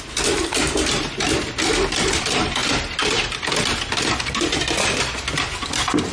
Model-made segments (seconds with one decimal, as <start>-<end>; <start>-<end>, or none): 0.0-2.6; 3.3-6.1